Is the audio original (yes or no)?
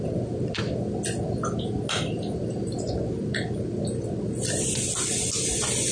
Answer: yes